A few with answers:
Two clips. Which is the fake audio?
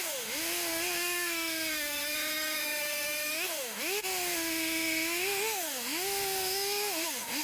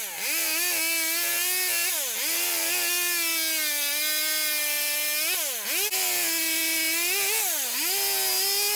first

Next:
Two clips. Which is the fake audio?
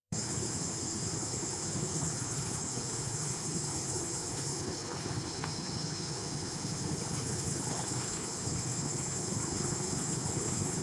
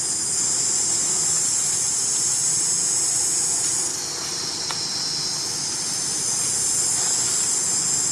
first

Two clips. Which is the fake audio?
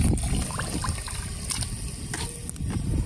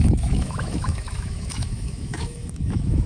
second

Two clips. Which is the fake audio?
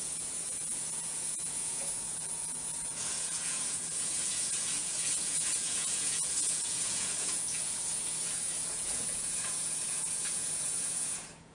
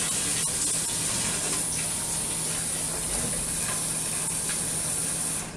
first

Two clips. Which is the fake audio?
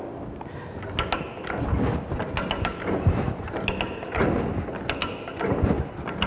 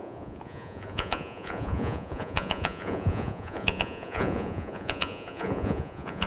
second